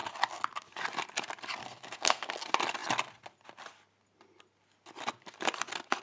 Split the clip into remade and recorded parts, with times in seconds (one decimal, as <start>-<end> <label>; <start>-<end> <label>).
0.0-1.6 recorded; 1.6-2.3 remade; 2.3-6.0 recorded